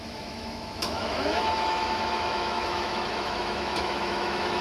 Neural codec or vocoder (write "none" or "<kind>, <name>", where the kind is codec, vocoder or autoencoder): autoencoder, DAC-VAE